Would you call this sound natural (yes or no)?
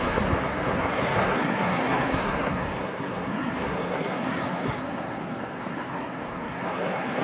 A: no